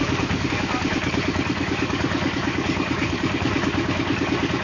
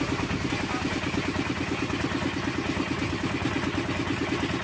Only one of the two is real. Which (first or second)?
second